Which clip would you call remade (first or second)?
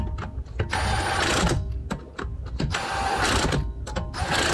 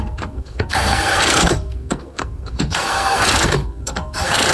second